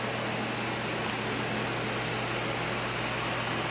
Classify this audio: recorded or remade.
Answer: recorded